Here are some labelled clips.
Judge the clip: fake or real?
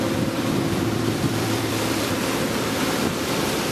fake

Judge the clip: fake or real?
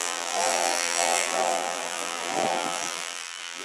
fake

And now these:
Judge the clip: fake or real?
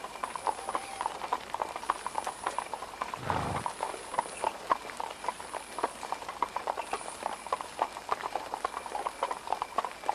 fake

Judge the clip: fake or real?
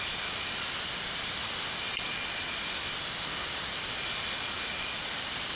real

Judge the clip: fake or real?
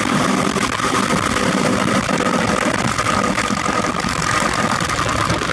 real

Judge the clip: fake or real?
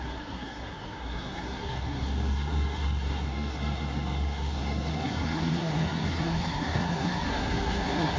fake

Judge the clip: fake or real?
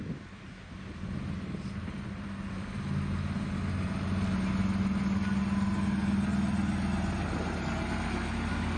real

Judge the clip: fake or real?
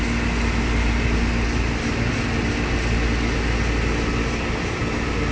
real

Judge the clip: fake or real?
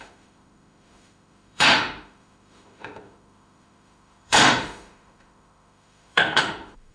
fake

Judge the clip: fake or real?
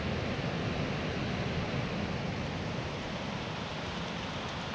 real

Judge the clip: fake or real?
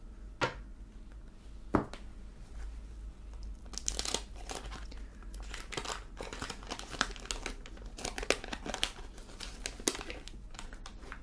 real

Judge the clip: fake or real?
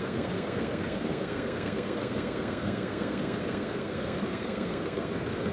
fake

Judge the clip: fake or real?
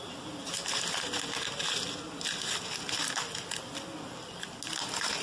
real